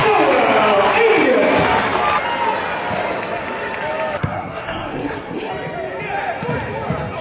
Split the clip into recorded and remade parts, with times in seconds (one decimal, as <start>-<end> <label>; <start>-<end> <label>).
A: 0.0-4.2 recorded; 4.2-5.5 remade; 5.5-7.2 recorded